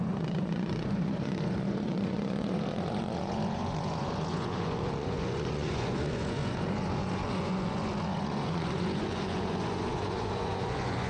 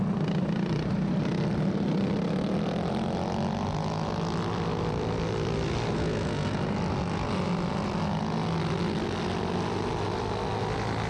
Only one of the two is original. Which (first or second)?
second